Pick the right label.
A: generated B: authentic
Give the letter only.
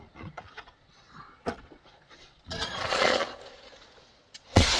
A